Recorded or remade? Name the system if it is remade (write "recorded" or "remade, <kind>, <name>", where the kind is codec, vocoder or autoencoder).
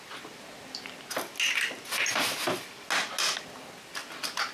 recorded